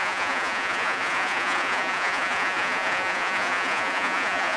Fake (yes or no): yes